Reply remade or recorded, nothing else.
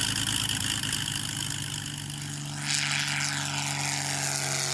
recorded